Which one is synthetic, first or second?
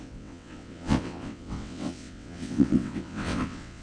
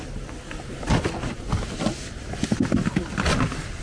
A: first